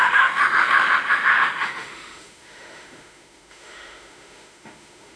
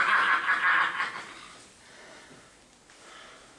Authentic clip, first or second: second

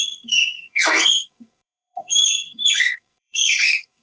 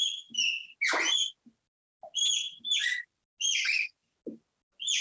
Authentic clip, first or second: second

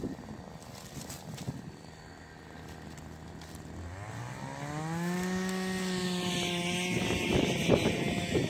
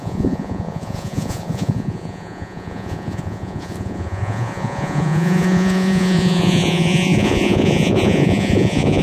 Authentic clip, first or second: first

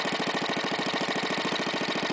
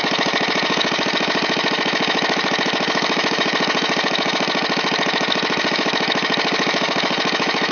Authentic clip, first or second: first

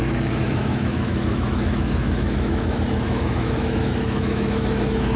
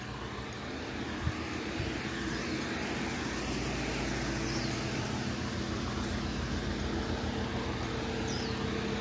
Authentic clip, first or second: second